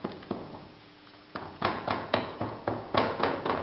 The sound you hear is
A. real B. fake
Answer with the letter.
B